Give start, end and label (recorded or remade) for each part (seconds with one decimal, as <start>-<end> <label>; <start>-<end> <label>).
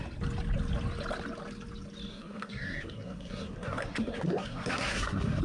0.0-2.1 recorded; 2.1-5.4 remade